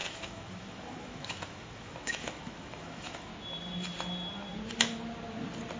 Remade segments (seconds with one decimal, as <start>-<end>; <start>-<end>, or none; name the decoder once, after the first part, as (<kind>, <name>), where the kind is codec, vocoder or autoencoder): 0.0-3.3 (autoencoder, DAC-VAE)